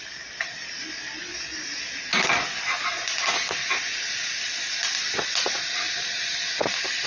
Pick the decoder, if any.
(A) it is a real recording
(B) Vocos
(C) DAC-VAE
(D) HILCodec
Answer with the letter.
A